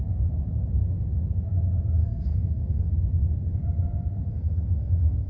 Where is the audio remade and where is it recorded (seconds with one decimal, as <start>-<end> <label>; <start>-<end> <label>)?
0.0-2.0 recorded; 2.0-2.9 remade; 2.9-4.3 recorded; 4.3-5.3 remade